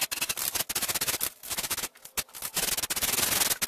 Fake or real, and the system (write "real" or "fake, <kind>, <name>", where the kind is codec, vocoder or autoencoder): real